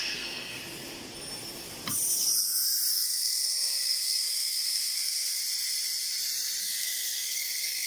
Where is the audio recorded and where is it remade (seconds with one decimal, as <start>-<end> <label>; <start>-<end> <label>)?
0.0-0.6 remade; 0.6-2.9 recorded; 2.9-5.4 remade; 5.4-6.6 recorded; 6.6-7.9 remade